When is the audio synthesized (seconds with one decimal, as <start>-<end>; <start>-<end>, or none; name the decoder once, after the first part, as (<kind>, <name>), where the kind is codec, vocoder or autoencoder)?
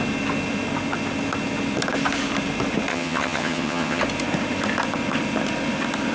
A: 2.9-4.0 (vocoder, HiFi-GAN)